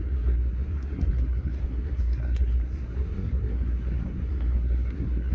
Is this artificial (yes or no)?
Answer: yes